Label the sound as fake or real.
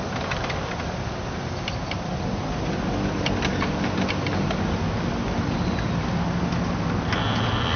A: real